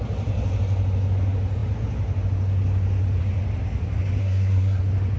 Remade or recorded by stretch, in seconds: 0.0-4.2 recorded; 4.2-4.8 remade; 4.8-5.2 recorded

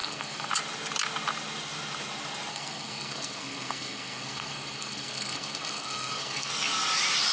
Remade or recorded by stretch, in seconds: 0.0-0.5 remade; 0.5-2.5 recorded; 2.5-6.5 remade; 6.5-7.3 recorded

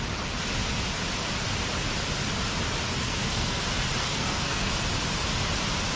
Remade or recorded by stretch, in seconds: 0.0-3.0 recorded; 3.0-3.6 remade; 3.6-4.0 recorded; 4.0-4.7 remade; 4.7-6.0 recorded

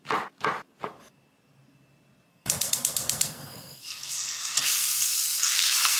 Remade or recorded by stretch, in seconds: 0.0-2.3 recorded; 2.3-6.0 remade

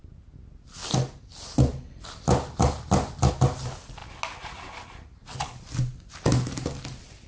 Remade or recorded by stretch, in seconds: 0.0-7.3 recorded

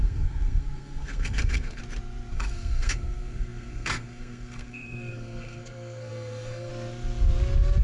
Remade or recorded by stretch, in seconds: 0.0-1.8 remade; 1.8-2.3 recorded; 2.3-6.7 remade; 6.7-7.8 recorded

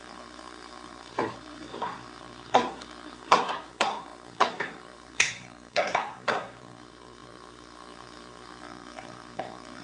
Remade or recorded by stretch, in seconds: 0.0-9.8 remade